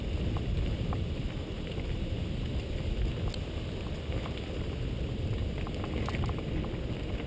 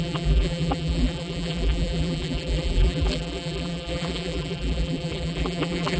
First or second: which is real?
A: first